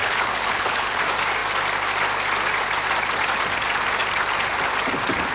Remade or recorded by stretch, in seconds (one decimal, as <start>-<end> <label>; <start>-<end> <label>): 0.0-1.0 remade; 1.0-5.3 recorded